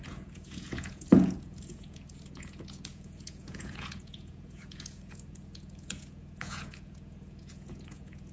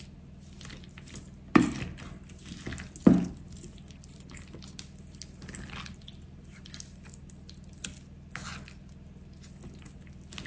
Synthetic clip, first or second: first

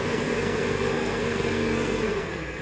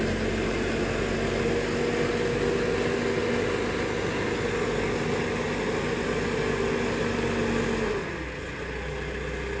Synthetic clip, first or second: first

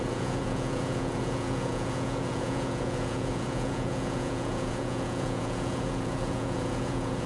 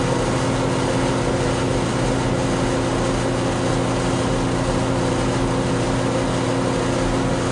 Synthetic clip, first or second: first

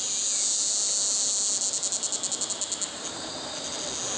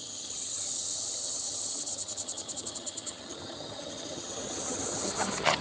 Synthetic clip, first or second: second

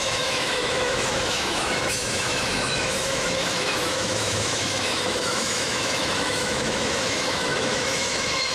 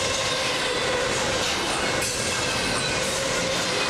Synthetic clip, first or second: first